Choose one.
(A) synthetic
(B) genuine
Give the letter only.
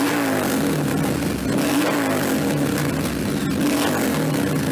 B